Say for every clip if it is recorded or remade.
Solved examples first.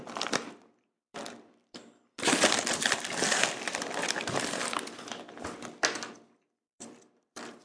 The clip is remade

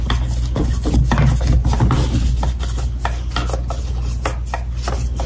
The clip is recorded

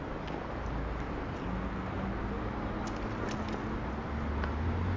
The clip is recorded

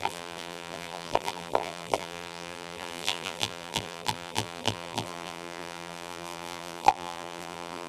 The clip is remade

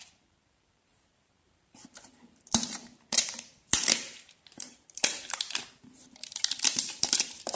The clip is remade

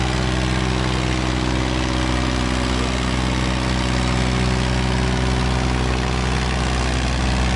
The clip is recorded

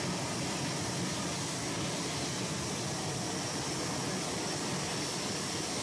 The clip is recorded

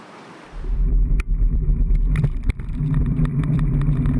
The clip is remade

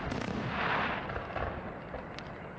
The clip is recorded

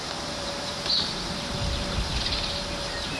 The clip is remade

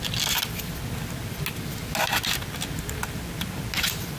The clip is recorded